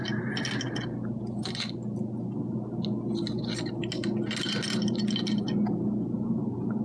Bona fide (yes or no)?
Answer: yes